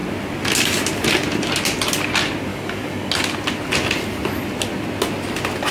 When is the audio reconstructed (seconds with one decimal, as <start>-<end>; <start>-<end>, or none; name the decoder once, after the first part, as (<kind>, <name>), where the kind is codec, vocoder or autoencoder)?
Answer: 2.5-3.1 (codec, DAC)